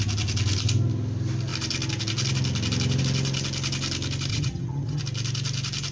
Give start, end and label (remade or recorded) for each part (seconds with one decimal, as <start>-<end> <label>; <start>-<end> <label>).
0.0-4.3 recorded; 4.3-5.0 remade; 5.0-5.9 recorded